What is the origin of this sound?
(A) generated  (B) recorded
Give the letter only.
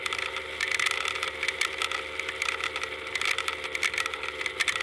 B